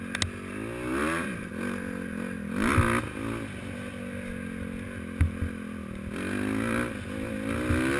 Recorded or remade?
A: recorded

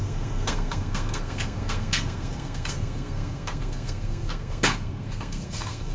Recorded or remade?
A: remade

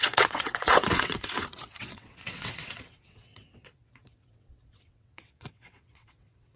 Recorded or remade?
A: remade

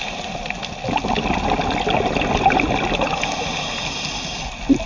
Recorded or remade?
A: recorded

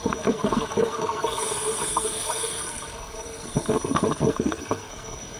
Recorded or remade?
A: remade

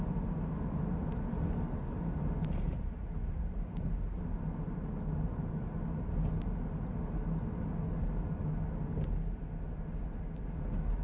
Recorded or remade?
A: recorded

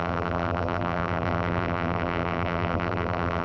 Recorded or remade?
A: remade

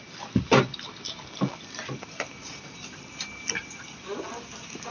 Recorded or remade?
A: recorded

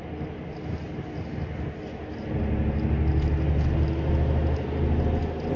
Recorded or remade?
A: recorded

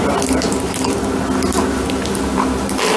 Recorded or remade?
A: recorded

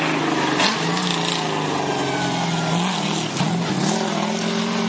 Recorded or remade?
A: recorded